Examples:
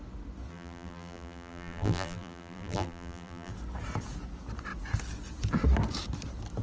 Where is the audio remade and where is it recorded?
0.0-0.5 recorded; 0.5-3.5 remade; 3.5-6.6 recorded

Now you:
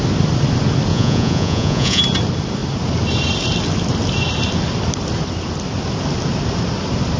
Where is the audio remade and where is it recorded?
0.0-0.9 recorded; 0.9-2.0 remade; 2.0-7.2 recorded

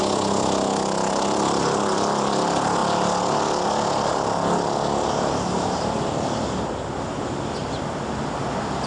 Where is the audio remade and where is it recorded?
0.0-8.9 recorded

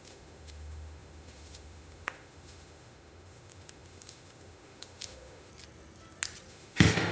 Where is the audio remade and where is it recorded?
0.0-5.5 remade; 5.5-6.5 recorded; 6.5-7.1 remade

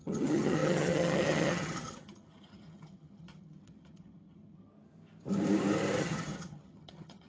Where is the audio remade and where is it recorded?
0.0-4.7 remade; 4.7-6.0 recorded; 6.0-7.3 remade

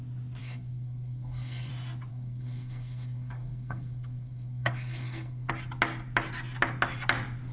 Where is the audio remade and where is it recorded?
0.0-0.4 recorded; 0.4-1.7 remade; 1.7-2.1 recorded; 2.1-5.5 remade; 5.5-7.5 recorded